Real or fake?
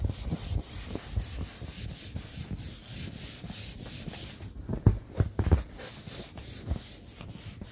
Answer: real